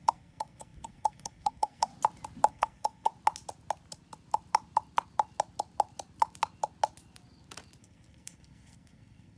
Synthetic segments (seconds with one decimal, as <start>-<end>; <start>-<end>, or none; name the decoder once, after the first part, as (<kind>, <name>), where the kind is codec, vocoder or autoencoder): 0.0-1.9 (codec, SNAC); 2.5-3.1; 7.8-9.4

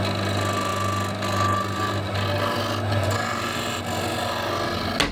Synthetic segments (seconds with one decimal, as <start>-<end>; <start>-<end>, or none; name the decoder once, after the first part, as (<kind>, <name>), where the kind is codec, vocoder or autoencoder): none